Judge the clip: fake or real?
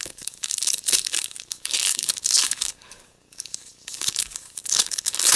fake